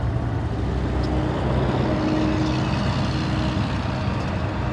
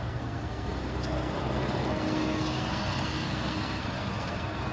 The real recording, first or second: first